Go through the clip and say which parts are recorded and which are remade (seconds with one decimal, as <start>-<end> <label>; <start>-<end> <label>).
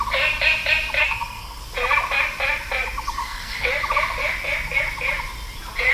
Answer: 0.0-1.0 recorded; 1.0-1.6 remade; 1.6-3.2 recorded; 3.2-3.7 remade; 3.7-5.9 recorded